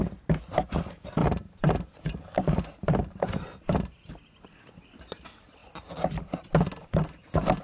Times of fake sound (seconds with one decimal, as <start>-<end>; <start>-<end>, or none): 1.2-4.1